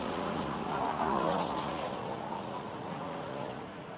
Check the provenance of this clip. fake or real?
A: fake